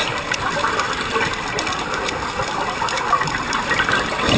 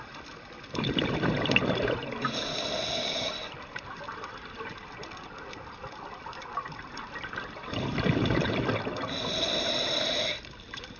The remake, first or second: second